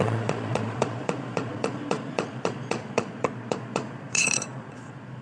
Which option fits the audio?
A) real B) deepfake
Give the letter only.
B